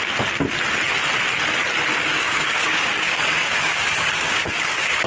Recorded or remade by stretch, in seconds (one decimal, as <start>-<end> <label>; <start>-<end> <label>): 0.0-1.9 recorded; 1.9-5.1 remade